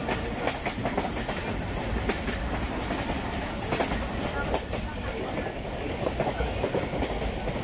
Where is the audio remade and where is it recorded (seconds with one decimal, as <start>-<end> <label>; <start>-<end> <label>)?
0.0-4.9 recorded; 4.9-6.9 remade; 6.9-7.6 recorded